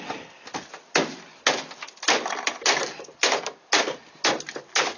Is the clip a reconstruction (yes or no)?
no